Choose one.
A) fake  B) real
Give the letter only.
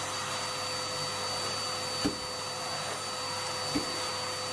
B